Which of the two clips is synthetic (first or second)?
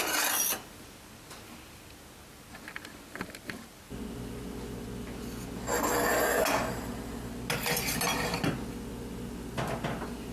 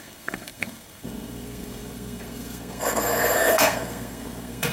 second